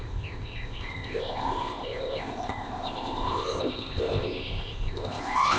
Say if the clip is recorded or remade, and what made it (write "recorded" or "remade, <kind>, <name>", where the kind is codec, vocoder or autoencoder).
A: remade, codec, ZipCodec